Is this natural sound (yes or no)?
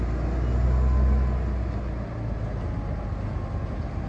yes